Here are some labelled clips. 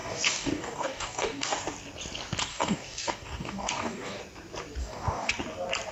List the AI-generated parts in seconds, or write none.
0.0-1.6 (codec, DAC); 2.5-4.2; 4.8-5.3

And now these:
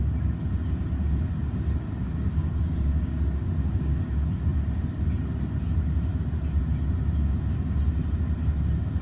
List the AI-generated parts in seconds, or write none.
1.4-4.1 (codec, DAC)